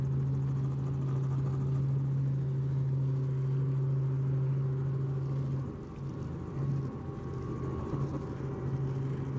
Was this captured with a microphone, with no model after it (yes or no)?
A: yes